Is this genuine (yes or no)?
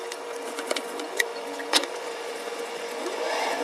no